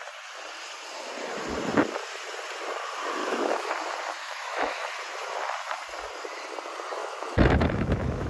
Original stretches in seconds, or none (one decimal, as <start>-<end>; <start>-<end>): 0.0-3.2; 3.7-4.2; 4.9-7.0